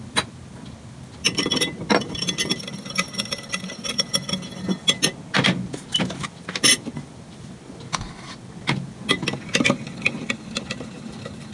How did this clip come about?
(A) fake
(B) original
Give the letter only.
B